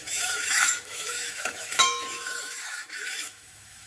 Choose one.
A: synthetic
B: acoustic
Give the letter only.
A